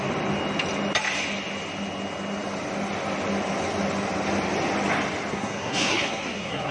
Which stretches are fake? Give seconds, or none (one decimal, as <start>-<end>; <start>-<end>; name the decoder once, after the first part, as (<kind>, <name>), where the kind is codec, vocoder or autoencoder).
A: 5.3-6.7 (codec, SNAC)